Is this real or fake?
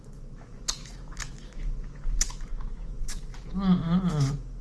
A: fake